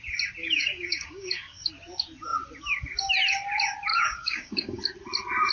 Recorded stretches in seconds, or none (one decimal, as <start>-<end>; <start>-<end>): 0.0-0.4; 1.7-3.9; 4.8-5.5